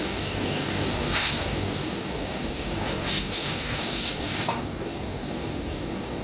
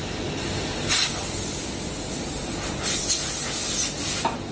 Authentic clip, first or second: second